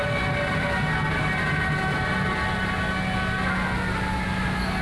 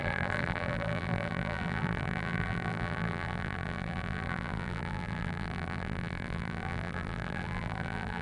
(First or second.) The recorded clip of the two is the first